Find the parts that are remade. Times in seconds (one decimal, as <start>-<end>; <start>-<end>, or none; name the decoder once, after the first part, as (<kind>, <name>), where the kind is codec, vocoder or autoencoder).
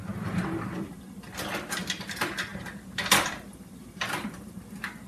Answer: none